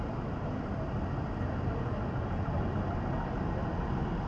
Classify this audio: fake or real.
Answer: real